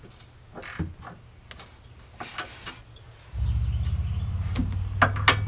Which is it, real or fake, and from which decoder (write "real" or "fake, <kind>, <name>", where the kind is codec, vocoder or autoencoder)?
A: real